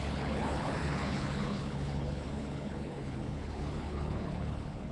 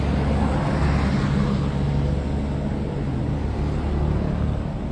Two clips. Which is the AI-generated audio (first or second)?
first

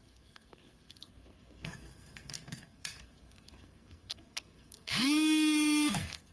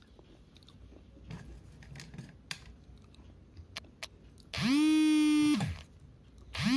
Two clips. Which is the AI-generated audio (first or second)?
first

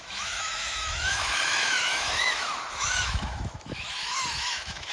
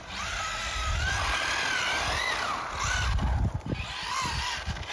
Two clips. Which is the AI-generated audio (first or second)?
first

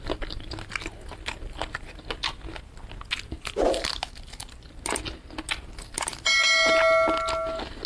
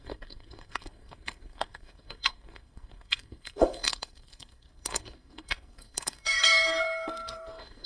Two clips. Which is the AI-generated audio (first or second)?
second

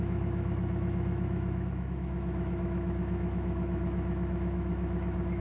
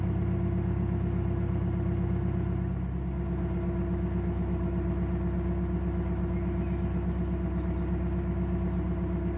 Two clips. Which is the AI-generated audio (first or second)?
first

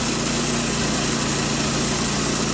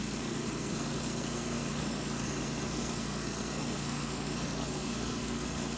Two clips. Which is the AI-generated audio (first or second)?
second